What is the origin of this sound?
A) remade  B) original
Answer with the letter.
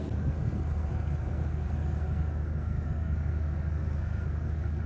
A